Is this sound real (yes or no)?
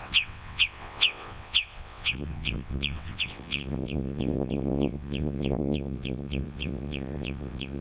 no